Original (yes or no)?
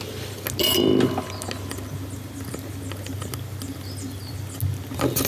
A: yes